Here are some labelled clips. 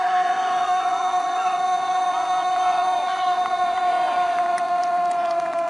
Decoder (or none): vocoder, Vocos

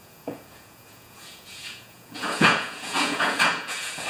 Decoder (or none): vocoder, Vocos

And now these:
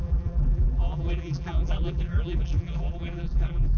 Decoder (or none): vocoder, BigVGAN v2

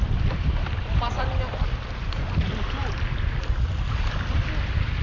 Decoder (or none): none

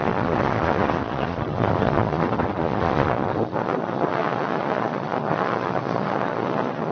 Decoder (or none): vocoder, Vocos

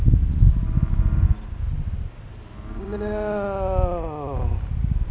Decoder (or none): none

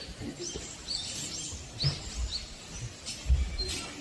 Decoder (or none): none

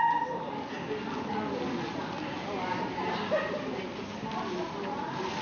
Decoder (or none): none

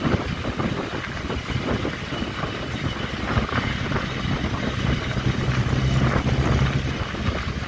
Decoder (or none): none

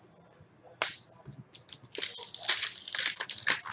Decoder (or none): none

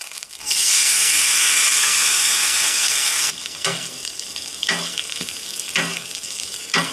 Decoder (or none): codec, SNAC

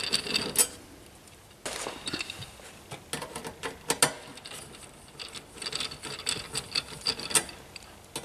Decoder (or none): none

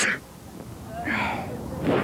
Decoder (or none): none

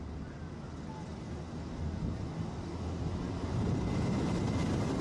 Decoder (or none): vocoder, BigVGAN v2